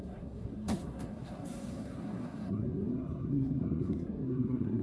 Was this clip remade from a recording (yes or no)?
yes